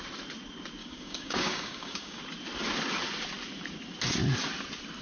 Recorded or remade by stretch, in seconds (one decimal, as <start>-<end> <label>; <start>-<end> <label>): 0.0-0.8 recorded; 0.8-2.2 remade; 2.2-5.0 recorded